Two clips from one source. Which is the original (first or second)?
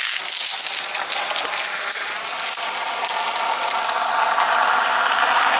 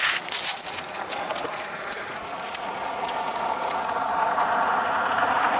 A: first